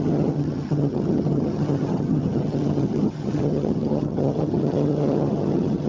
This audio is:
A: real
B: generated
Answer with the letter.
B